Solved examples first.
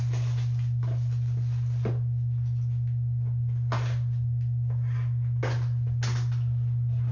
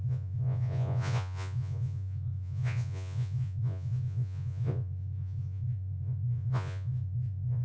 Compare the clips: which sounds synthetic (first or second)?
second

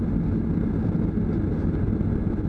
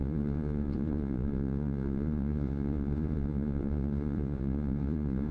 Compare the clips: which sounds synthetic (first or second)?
second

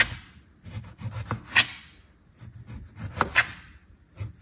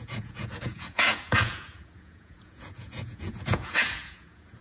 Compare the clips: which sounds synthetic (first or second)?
second